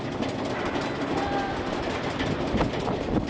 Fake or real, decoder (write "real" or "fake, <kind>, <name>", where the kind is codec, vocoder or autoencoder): real